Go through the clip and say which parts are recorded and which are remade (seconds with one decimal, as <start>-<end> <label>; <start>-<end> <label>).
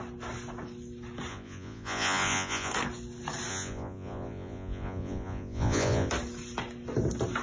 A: 0.0-1.3 recorded; 1.3-2.7 remade; 2.7-3.5 recorded; 3.5-6.1 remade; 6.1-7.4 recorded